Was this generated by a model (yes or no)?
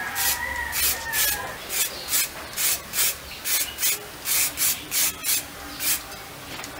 no